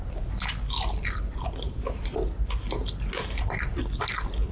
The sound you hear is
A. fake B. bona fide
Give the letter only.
B